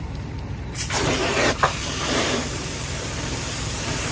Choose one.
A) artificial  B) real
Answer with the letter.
A